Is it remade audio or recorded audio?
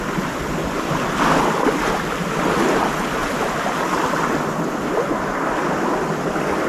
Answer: recorded